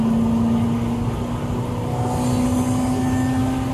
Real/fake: real